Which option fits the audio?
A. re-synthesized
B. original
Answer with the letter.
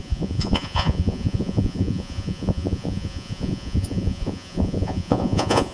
A